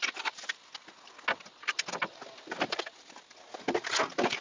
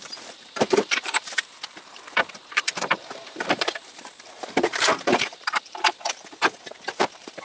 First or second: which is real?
first